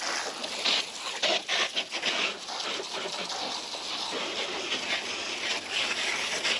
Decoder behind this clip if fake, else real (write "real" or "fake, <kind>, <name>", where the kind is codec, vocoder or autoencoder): real